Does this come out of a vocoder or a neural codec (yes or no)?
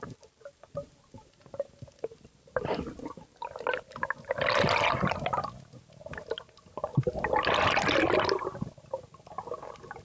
no